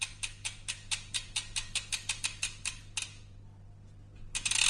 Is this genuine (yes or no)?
yes